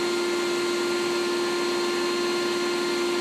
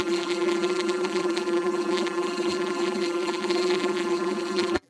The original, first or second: first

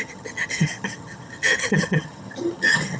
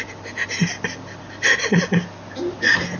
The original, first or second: second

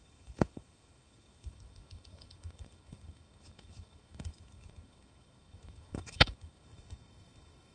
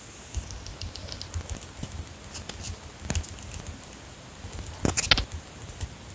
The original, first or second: second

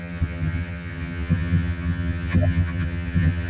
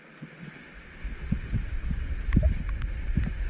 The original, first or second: second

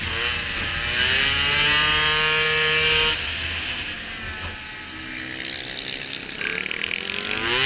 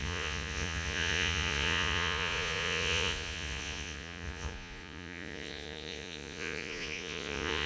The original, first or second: first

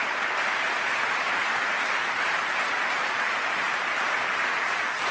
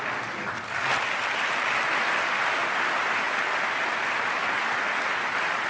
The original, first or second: second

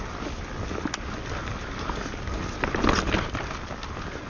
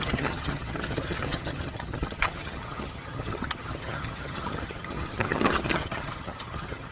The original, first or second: first